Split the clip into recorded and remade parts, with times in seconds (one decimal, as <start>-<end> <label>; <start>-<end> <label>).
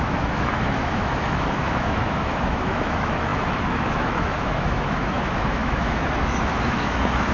0.0-7.3 remade